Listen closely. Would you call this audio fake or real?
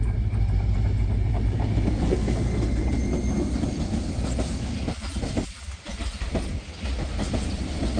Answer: real